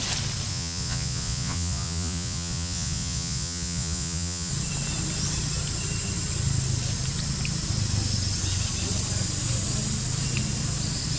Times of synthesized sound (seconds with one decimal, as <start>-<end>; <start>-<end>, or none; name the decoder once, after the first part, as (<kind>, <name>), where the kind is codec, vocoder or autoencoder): 0.5-4.5 (vocoder, Vocos)